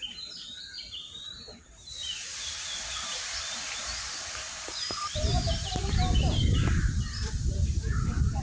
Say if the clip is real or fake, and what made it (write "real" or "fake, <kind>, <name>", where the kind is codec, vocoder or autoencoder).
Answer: fake, vocoder, BigVGAN v2